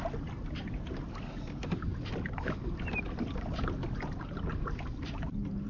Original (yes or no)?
yes